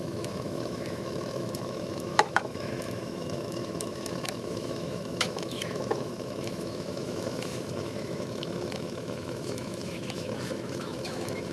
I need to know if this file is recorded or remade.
remade